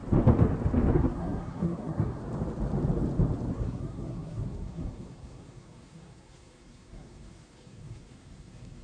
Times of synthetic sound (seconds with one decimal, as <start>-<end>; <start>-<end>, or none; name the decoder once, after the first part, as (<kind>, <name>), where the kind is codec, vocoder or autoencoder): 0.9-2.2 (codec, SNAC); 3.5-8.8